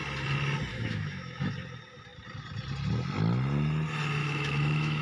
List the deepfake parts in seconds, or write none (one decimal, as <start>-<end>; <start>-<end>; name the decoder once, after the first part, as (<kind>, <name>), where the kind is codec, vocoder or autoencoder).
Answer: 0.7-1.5 (autoencoder, DAC-VAE); 4.2-5.0